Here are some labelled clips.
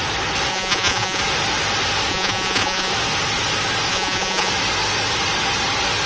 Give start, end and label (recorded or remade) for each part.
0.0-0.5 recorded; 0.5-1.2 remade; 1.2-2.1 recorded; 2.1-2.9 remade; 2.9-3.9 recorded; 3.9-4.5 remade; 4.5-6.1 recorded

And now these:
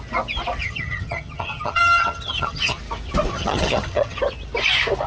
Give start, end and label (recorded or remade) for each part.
0.0-0.6 recorded; 0.6-2.8 remade; 2.8-3.3 recorded; 3.3-4.2 remade; 4.2-5.1 recorded

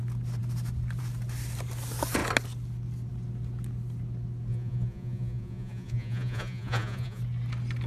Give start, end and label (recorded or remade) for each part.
0.0-4.5 recorded; 4.5-7.2 remade; 7.2-7.9 recorded

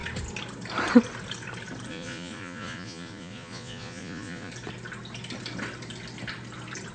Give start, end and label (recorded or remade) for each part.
0.0-1.9 recorded; 1.9-4.5 remade; 4.5-6.9 recorded

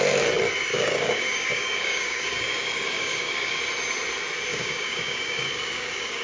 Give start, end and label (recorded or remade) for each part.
0.0-0.7 recorded; 0.7-3.6 remade; 3.6-4.5 recorded; 4.5-6.2 remade

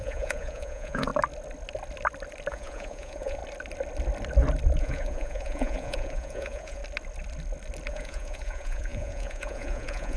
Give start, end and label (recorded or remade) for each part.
0.0-1.1 remade; 1.1-2.5 recorded; 2.5-3.4 remade; 3.4-4.8 recorded; 4.8-6.8 remade; 6.8-7.9 recorded; 7.9-10.2 remade

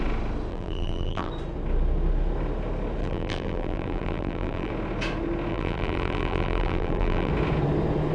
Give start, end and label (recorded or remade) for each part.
0.0-0.5 recorded; 0.5-1.3 remade; 1.3-3.0 recorded; 3.0-4.7 remade; 4.7-5.5 recorded; 5.5-7.3 remade; 7.3-8.1 recorded

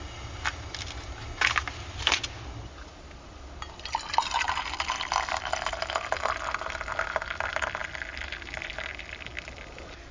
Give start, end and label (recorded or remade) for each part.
0.0-10.1 recorded